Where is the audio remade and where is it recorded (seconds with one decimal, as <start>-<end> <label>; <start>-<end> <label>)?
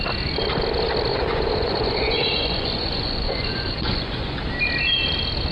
0.0-1.1 recorded; 1.1-4.4 remade; 4.4-5.5 recorded